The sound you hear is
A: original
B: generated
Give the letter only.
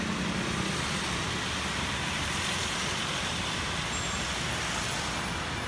A